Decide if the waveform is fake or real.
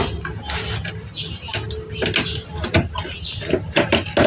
real